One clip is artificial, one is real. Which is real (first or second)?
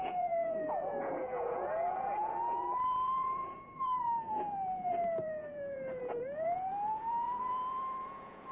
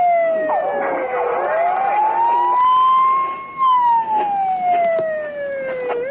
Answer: second